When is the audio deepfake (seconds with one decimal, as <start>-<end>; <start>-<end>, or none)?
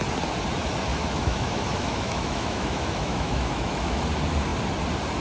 0.9-4.0